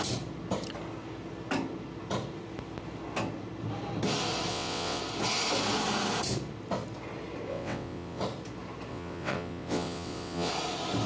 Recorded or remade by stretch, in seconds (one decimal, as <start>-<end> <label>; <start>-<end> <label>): 0.0-4.5 recorded; 4.5-5.0 remade; 5.0-7.5 recorded; 7.5-8.2 remade; 8.2-8.9 recorded; 8.9-10.5 remade; 10.5-11.1 recorded